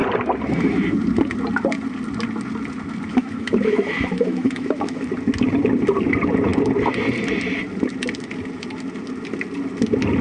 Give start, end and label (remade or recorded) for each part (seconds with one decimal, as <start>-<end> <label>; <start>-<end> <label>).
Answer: 0.0-3.1 recorded; 3.1-5.1 remade; 5.1-10.2 recorded